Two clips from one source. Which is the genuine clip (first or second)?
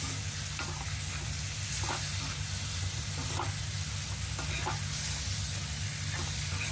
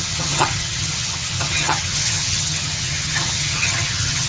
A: first